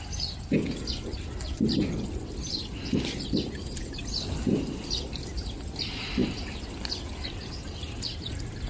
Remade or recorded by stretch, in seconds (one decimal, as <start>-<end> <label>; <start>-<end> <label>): 0.0-8.7 recorded